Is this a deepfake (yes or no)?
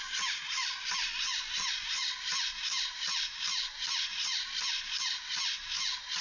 no